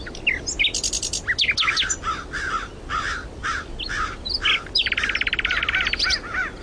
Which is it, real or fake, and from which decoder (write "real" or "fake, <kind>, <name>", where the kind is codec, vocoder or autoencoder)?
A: real